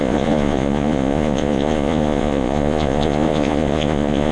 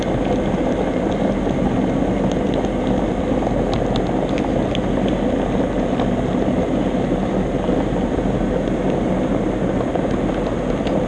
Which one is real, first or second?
second